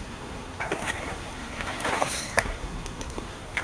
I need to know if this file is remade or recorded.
remade